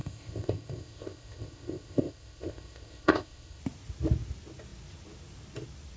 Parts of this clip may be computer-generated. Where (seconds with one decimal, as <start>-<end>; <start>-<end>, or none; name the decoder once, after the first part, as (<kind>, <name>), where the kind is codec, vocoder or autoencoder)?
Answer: 0.0-3.6 (codec, ZipCodec)